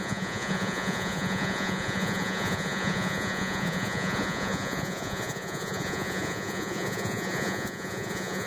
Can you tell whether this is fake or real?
fake